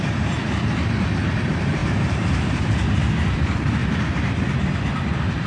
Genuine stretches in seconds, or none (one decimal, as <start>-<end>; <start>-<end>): 3.8-4.9